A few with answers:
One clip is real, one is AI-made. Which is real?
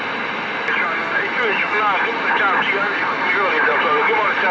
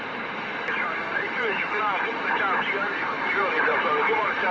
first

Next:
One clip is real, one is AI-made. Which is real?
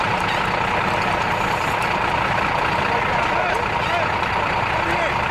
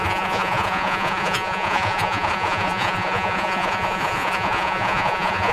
first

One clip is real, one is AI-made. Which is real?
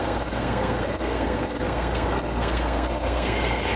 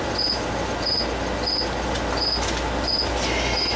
second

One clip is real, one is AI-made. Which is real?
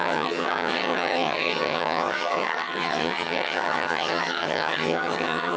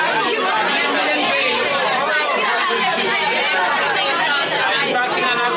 second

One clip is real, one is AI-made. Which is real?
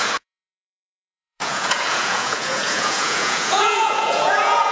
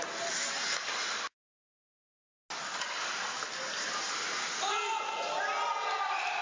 second